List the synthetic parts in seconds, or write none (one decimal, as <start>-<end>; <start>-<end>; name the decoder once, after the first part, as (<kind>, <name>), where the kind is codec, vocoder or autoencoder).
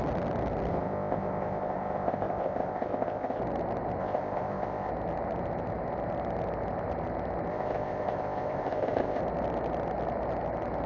0.7-3.4 (codec, ZipCodec); 4.0-4.9; 7.5-9.2